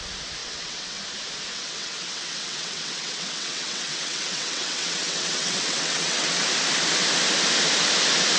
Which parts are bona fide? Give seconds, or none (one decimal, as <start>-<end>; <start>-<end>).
0.0-0.4; 1.0-1.5; 6.4-8.4